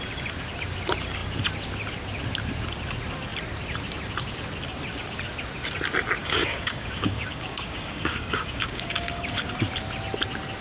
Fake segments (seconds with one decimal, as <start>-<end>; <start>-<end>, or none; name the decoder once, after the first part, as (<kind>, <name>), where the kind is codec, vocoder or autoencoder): 6.2-9.6 (codec, DAC)